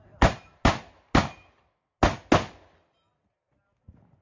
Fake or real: real